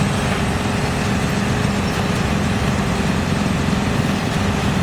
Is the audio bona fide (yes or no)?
yes